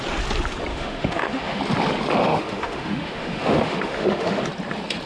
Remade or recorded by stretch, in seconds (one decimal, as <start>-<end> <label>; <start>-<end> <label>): 0.0-0.7 recorded; 0.7-1.6 remade; 1.6-2.2 recorded; 2.2-4.4 remade; 4.4-5.1 recorded